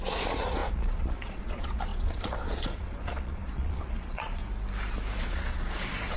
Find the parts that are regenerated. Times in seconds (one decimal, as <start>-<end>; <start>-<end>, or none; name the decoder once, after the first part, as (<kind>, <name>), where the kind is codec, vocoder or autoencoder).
0.0-4.4 (vocoder, Vocos); 5.2-6.2

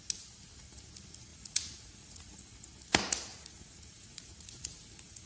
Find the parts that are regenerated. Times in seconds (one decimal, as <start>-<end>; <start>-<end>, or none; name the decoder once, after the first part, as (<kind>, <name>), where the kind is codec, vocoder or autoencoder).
1.3-2.5 (vocoder, Vocos); 3.3-5.3

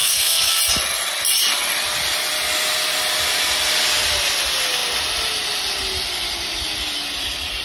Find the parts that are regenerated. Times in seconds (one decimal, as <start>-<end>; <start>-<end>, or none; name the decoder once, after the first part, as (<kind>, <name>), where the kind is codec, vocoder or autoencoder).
0.0-0.6 (codec, SNAC)

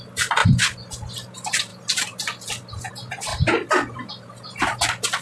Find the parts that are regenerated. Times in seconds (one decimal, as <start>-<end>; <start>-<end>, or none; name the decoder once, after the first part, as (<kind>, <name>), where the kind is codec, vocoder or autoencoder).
none

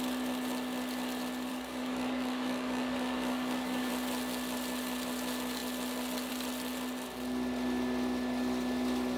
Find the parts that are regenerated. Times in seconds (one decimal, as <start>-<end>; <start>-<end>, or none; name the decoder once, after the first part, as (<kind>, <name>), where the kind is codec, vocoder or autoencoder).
1.5-3.9 (codec, DAC)

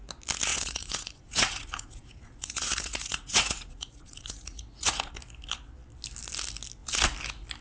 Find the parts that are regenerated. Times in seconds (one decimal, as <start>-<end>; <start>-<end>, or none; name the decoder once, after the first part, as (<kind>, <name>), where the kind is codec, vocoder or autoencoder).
0.5-5.1 (vocoder, Vocos)

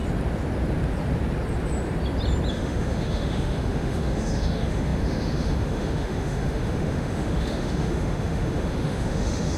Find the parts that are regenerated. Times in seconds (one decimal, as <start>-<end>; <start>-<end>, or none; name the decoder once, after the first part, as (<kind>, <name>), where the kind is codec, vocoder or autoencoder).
2.5-9.6 (autoencoder, DAC-VAE)